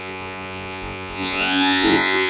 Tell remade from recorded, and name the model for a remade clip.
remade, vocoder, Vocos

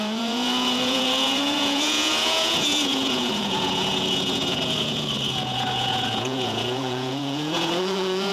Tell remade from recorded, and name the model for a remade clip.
remade, vocoder, Vocos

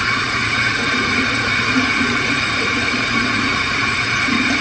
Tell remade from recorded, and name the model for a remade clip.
remade, vocoder, Vocos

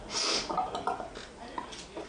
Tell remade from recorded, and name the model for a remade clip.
recorded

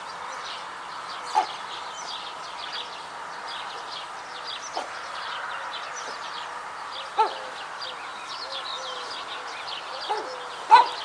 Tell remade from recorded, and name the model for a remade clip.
recorded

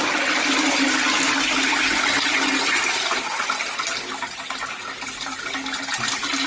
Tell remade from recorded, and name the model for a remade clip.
recorded